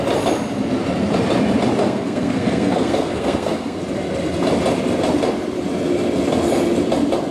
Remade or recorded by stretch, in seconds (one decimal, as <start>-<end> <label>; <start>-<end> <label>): 0.0-1.8 recorded; 1.8-3.8 remade; 3.8-7.3 recorded